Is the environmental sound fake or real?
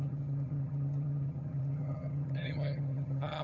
fake